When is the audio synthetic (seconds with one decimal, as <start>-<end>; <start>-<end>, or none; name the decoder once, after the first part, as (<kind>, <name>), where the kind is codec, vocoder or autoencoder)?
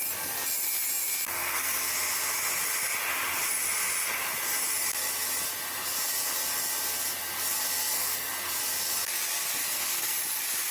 1.3-1.9 (codec, SNAC); 7.8-8.3; 9.6-10.2